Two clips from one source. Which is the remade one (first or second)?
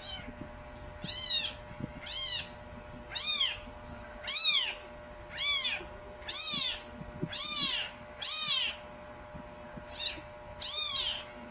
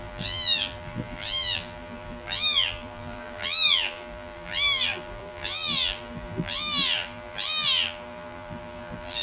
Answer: second